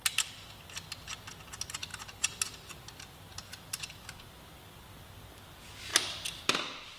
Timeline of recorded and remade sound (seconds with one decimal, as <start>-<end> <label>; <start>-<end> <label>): 0.0-7.0 recorded